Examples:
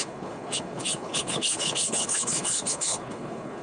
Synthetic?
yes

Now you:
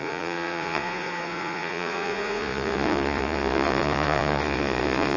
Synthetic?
yes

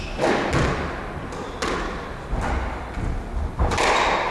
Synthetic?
no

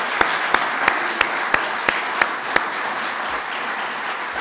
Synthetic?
no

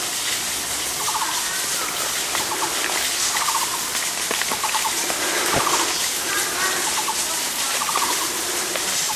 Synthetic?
no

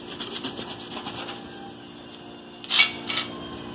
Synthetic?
no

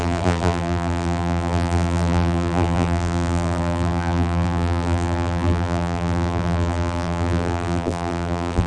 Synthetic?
yes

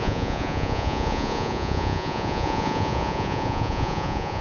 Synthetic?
yes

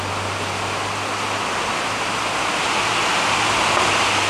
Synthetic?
no